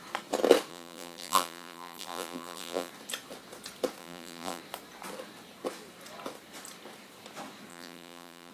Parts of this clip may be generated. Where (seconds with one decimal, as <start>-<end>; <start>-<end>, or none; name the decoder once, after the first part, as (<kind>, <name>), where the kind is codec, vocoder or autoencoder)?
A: 0.7-2.9 (vocoder, BigVGAN v2); 4.0-4.6; 7.7-8.5